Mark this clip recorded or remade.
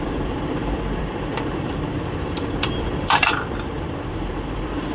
remade